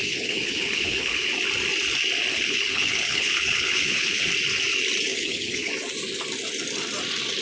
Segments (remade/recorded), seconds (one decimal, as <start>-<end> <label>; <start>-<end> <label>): 0.0-1.3 remade; 1.3-2.3 recorded; 2.3-4.3 remade; 4.3-5.1 recorded; 5.1-5.7 remade; 5.7-7.4 recorded